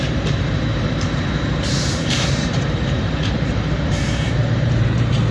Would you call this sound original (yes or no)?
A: no